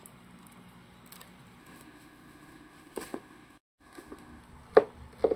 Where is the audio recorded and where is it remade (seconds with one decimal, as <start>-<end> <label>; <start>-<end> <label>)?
0.0-1.6 recorded; 1.6-4.4 remade; 4.4-5.4 recorded